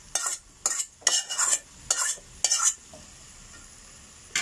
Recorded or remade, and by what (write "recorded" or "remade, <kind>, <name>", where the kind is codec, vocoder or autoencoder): recorded